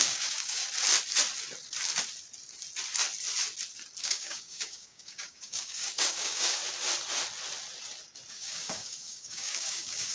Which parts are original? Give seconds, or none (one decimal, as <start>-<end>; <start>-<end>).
0.6-4.0; 6.6-8.3